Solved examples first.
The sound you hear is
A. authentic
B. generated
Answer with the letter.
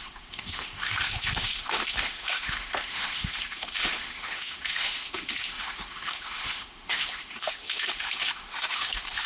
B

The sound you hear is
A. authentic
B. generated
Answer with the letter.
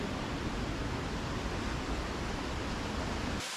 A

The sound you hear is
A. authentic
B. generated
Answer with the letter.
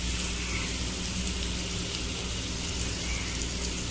A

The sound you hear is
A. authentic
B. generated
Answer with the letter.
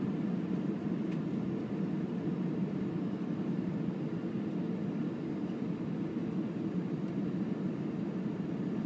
A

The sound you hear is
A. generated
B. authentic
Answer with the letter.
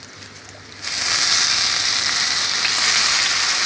B